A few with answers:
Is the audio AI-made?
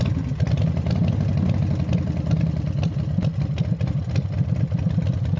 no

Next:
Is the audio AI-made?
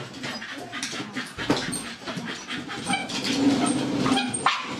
no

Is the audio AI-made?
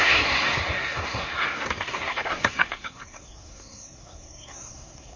yes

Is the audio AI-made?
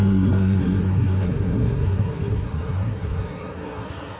yes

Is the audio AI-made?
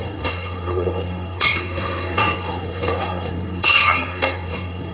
yes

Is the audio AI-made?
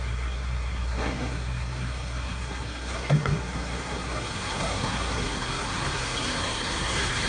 yes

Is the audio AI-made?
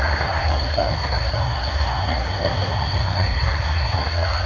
yes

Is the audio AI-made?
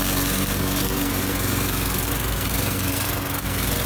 yes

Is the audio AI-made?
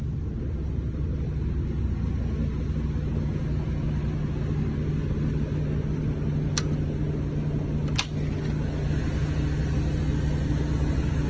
no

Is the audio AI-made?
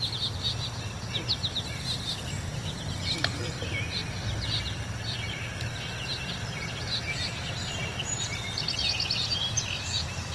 no